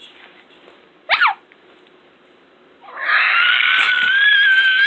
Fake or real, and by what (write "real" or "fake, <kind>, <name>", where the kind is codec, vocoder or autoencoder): real